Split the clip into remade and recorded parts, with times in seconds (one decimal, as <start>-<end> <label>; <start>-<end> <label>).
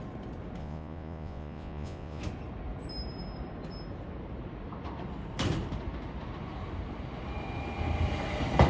0.0-0.6 recorded; 0.6-2.2 remade; 2.2-8.7 recorded